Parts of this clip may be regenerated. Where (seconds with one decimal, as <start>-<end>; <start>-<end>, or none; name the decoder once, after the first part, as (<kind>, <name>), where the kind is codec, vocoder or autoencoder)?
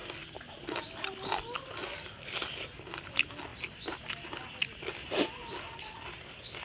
0.0-0.6 (vocoder, BigVGAN v2)